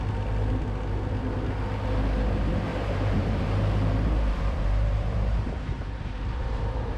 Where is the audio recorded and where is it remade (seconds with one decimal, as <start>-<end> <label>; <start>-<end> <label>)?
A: 0.0-2.7 recorded; 2.7-7.0 remade